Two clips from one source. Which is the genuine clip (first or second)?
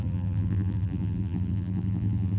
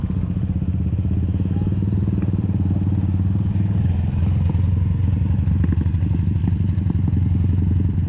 second